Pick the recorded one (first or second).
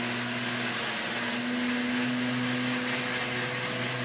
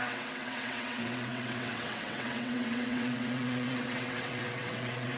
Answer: first